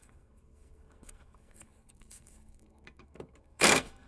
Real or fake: fake